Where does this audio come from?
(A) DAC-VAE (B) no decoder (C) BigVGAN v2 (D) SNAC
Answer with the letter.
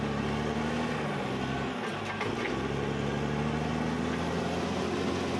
B